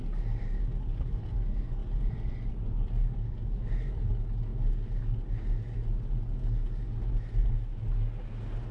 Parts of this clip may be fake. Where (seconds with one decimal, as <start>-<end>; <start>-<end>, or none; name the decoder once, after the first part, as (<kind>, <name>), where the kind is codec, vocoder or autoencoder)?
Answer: none